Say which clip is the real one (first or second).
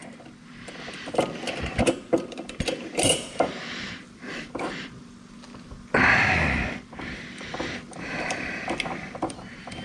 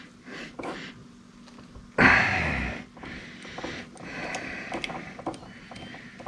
second